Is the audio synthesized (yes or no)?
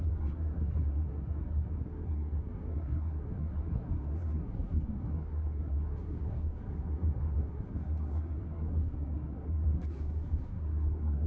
yes